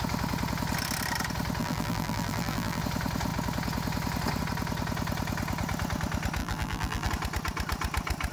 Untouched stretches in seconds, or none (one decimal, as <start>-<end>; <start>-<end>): 0.0-1.6; 2.8-6.4; 7.1-8.3